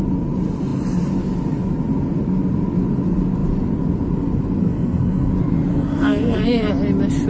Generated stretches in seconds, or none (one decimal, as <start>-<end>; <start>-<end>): 4.6-5.3; 5.7-6.7